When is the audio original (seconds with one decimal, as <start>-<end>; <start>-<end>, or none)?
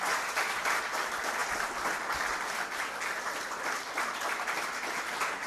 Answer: 0.0-5.5